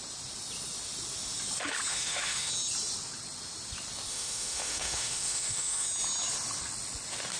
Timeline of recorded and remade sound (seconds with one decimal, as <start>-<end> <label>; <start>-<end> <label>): 0.0-1.9 recorded; 1.9-2.5 remade; 2.5-4.1 recorded; 4.1-5.9 remade; 5.9-7.4 recorded